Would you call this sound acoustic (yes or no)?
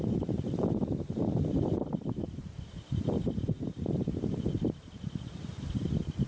yes